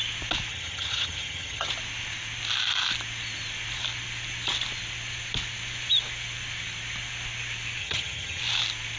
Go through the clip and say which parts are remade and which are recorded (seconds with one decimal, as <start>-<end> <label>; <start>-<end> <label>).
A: 0.0-0.5 recorded; 0.5-1.7 remade; 1.7-7.8 recorded; 7.8-8.4 remade; 8.4-9.0 recorded